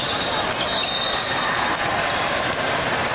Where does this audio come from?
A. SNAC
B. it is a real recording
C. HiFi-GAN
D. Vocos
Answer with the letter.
B